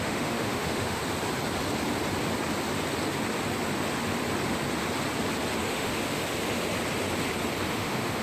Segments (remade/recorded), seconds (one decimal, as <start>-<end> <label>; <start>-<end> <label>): 0.0-1.0 remade; 1.0-5.7 recorded; 5.7-6.2 remade; 6.2-7.7 recorded; 7.7-8.2 remade